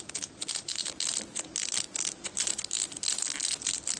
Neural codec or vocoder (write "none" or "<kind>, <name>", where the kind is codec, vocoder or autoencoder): none